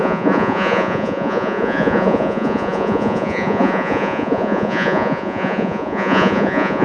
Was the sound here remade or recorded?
remade